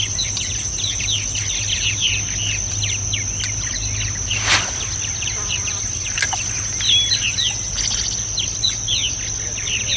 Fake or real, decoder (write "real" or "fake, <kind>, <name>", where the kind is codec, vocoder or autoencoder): real